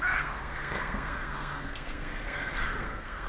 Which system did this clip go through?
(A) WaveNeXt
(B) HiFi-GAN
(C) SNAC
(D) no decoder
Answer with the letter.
C